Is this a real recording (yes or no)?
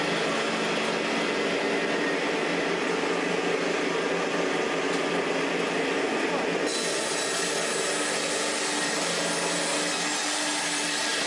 yes